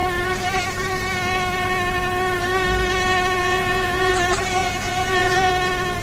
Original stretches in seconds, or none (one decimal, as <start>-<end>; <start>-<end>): 0.0-3.4; 4.1-4.6; 5.5-6.0